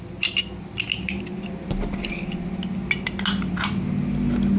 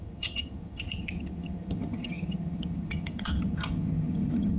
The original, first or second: first